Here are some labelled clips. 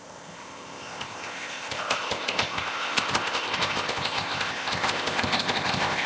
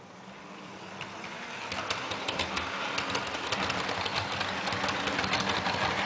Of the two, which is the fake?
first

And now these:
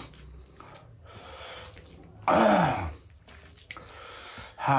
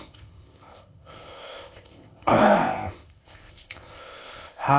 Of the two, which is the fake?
second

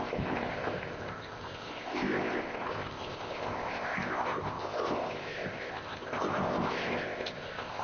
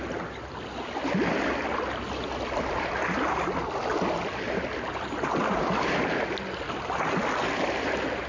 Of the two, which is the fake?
first